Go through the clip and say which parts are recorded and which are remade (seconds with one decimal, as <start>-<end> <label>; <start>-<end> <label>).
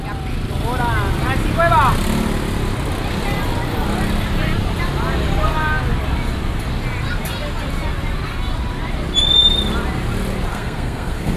0.0-10.5 recorded; 10.5-11.4 remade